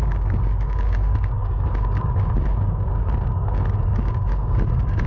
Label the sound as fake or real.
fake